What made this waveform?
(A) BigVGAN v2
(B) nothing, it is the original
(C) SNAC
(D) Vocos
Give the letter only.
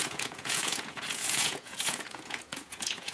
D